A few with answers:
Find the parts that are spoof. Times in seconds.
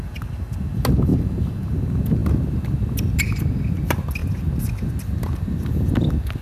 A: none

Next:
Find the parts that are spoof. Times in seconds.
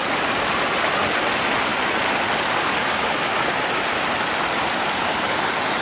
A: none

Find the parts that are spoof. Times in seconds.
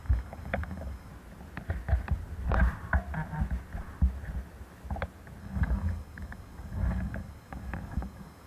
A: 0.0-1.1; 5.4-8.5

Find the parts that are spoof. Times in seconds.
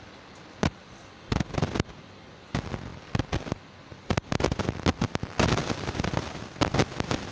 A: none